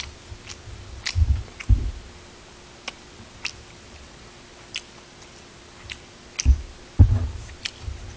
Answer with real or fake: real